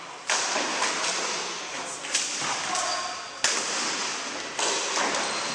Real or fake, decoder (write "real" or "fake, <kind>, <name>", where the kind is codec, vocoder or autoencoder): real